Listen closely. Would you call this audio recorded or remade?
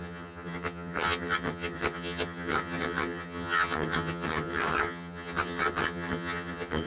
remade